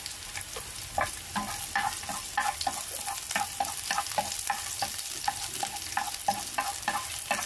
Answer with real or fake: real